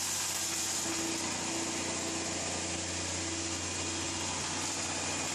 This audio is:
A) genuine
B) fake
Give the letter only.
A